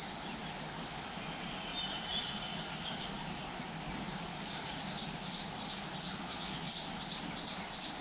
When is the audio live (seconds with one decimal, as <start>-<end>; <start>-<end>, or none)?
0.0-6.2; 6.7-8.0